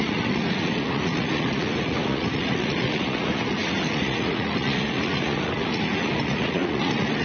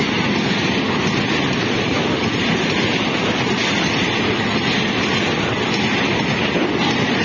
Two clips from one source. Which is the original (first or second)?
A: second